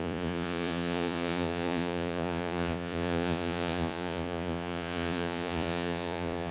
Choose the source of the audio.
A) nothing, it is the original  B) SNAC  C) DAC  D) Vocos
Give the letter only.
D